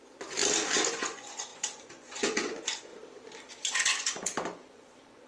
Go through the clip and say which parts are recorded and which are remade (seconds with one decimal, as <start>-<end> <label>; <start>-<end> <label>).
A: 0.0-0.4 remade; 0.4-0.9 recorded; 0.9-2.9 remade; 2.9-3.5 recorded; 3.5-5.3 remade